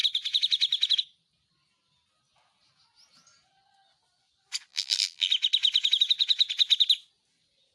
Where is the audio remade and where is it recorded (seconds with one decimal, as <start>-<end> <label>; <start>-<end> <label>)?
0.0-4.7 recorded; 4.7-5.3 remade; 5.3-7.7 recorded